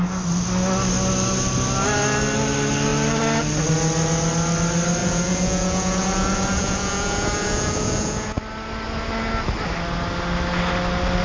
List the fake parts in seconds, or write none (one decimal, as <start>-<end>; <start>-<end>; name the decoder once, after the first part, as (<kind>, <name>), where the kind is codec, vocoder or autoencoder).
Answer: 5.0-8.4 (vocoder, Vocos)